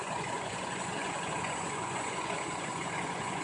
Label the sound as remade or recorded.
remade